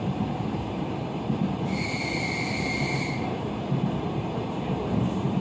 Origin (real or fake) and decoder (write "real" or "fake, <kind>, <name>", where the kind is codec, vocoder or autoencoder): fake, vocoder, BigVGAN v2